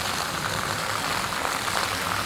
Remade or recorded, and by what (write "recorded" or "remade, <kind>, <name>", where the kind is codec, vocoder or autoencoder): recorded